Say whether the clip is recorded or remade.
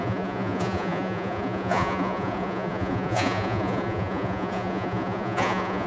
remade